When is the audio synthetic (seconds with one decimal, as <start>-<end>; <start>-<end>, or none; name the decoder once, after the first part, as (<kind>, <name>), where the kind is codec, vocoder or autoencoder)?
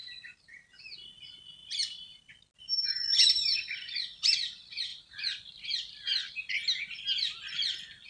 0.0-0.7 (vocoder, BigVGAN v2); 1.6-2.3; 4.9-6.3